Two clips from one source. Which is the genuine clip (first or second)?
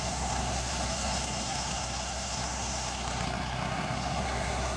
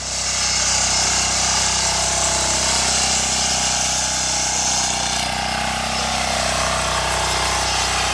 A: second